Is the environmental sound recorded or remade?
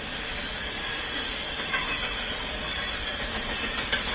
recorded